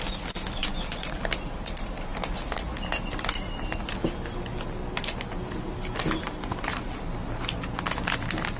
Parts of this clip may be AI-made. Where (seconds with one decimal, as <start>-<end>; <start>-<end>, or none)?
0.6-1.2